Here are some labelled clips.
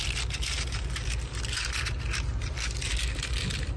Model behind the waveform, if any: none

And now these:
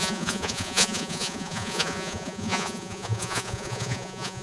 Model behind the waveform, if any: vocoder, Vocos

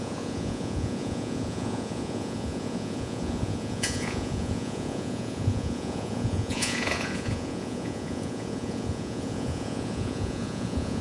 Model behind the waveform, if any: vocoder, Vocos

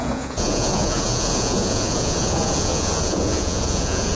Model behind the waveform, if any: vocoder, Vocos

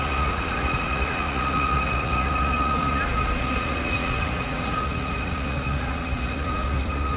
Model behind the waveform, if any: vocoder, Vocos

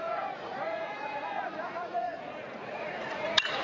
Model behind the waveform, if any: vocoder, Vocos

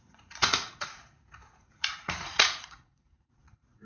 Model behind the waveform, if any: vocoder, Vocos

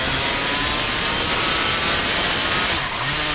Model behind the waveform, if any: none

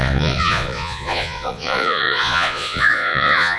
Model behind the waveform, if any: vocoder, Vocos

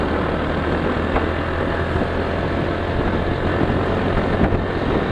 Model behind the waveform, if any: none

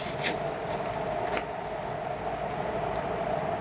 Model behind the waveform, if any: none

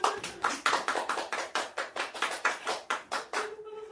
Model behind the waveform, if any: vocoder, Vocos